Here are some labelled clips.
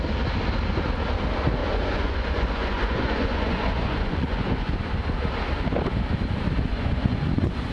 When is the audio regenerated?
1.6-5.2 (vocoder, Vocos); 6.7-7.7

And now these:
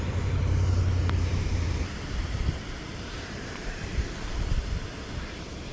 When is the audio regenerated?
1.3-2.4 (vocoder, BigVGAN v2); 2.9-4.6

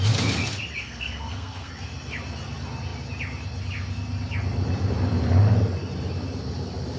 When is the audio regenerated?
0.8-1.7 (codec, SNAC)

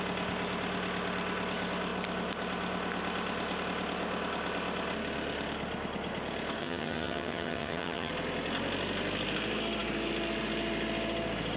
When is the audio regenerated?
6.6-8.1 (vocoder, HiFi-GAN)

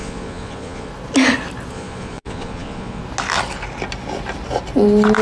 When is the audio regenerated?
0.0-0.9 (vocoder, Vocos); 1.7-3.0

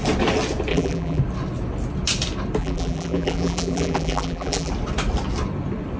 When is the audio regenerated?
0.7-1.2 (vocoder, BigVGAN v2); 2.6-4.7

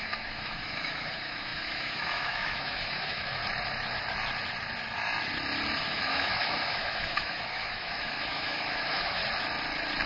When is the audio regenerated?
0.0-3.4 (autoencoder, DAC-VAE); 5.8-9.2

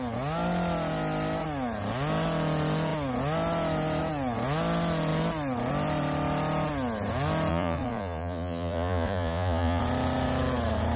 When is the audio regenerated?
7.5-9.8 (vocoder, Vocos)